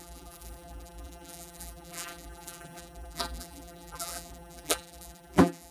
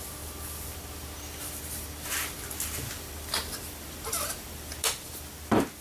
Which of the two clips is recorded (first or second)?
second